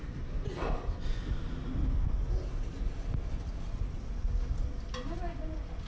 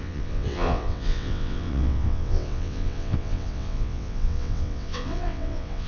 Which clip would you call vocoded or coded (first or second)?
second